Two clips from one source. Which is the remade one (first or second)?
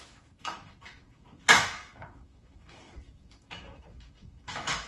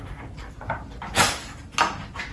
first